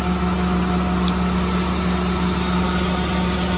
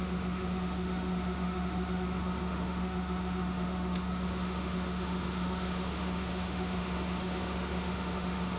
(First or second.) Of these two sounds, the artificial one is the second